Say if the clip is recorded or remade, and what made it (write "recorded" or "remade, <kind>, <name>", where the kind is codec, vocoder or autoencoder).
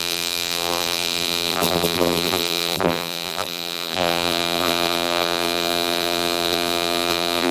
remade, vocoder, BigVGAN v2